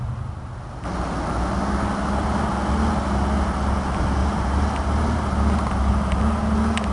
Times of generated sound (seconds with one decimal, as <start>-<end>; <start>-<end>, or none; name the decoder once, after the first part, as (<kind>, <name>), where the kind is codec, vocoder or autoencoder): 4.2-6.2 (vocoder, BigVGAN v2)